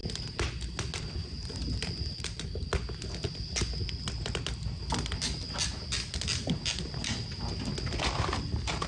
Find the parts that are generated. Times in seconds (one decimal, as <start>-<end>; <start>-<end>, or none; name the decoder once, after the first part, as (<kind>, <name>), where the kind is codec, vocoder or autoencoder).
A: 1.2-2.5 (vocoder, BigVGAN v2)